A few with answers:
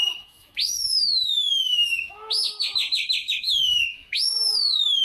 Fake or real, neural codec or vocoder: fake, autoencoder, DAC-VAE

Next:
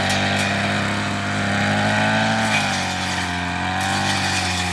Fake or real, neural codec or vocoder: real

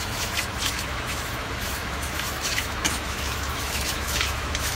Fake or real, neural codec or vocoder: fake, autoencoder, DAC-VAE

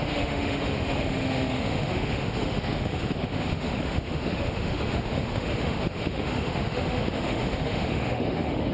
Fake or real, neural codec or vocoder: fake, autoencoder, DAC-VAE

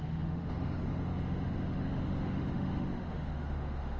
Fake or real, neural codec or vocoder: fake, autoencoder, DAC-VAE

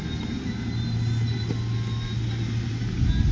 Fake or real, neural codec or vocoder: real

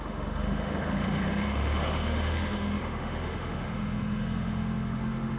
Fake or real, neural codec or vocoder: fake, autoencoder, DAC-VAE